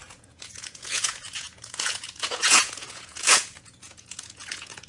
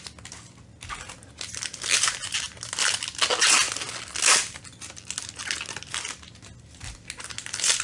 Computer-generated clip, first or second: first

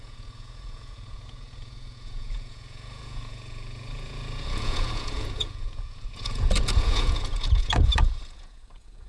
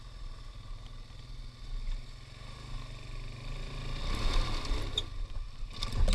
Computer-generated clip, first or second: first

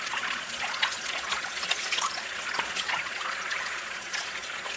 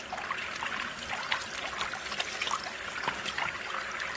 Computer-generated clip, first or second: first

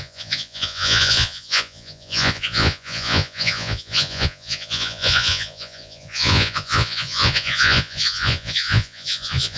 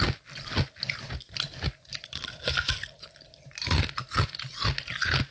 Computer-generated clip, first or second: first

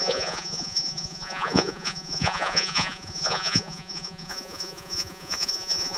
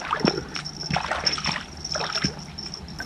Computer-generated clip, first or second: first